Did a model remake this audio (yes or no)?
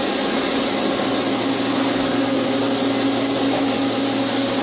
no